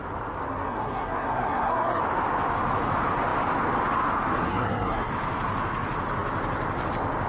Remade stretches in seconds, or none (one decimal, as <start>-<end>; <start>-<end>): 0.5-2.0; 4.4-5.1